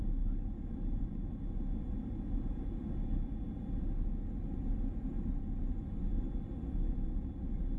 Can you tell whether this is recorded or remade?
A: remade